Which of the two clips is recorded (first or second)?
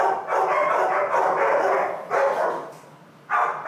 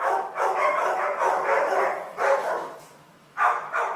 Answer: first